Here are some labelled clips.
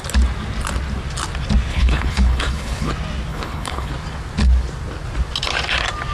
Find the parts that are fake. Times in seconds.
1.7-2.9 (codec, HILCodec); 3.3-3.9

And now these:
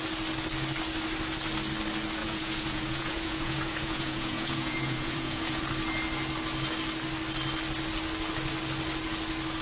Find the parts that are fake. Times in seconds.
2.2-5.6 (vocoder, Vocos)

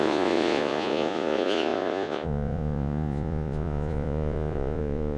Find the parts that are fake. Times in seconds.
0.0-5.2 (vocoder, Vocos)

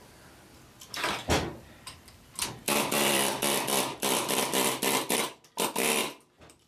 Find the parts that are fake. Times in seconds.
1.2-5.2 (vocoder, BigVGAN v2)

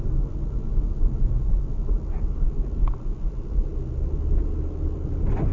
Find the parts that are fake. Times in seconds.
none

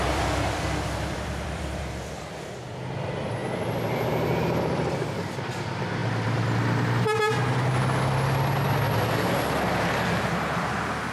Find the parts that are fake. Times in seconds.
0.0-3.4 (vocoder, BigVGAN v2); 4.6-6.0; 10.6-11.1

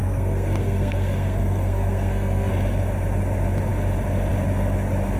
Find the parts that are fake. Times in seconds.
0.0-2.5 (codec, SNAC)